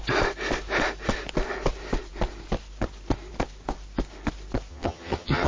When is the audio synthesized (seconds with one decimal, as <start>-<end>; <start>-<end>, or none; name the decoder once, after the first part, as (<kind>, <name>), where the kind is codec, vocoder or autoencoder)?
4.7-5.5 (vocoder, HiFi-GAN)